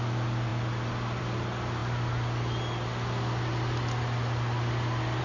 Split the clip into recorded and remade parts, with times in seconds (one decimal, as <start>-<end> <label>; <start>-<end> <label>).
0.0-5.2 recorded